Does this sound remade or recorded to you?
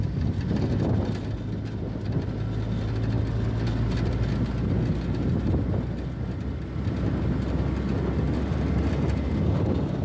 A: recorded